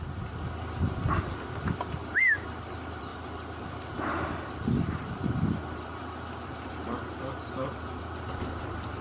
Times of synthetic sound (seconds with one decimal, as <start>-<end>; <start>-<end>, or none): 0.0-3.1; 4.4-9.0